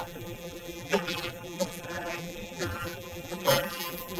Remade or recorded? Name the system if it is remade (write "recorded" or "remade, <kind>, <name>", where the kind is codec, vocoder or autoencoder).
remade, vocoder, BigVGAN v2